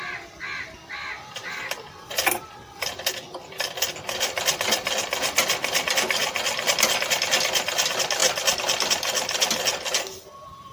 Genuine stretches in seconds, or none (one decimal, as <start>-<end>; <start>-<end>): 0.0-10.7